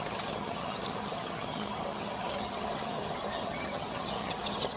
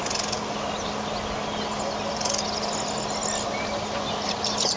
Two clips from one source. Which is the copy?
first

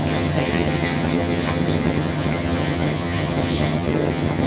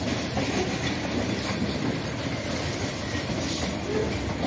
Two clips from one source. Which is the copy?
first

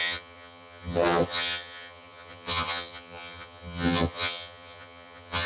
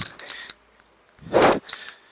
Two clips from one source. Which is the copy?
first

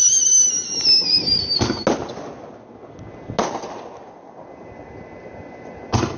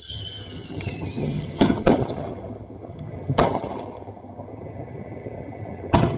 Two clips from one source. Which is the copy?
second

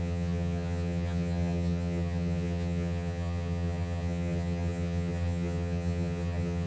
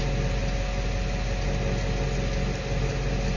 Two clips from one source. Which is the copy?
first